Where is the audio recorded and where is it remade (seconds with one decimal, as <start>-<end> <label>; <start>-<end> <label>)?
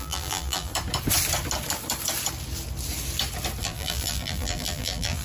0.0-0.7 remade; 0.7-3.6 recorded; 3.6-5.2 remade